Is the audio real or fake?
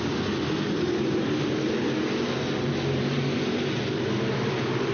real